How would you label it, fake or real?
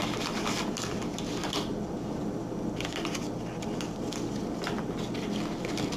real